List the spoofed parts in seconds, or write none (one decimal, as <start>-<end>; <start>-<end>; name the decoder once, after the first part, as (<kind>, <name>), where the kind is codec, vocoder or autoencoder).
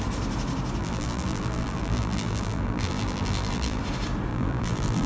0.8-3.8 (vocoder, BigVGAN v2); 4.3-5.1